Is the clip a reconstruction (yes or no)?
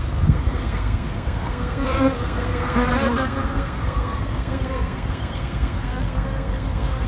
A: yes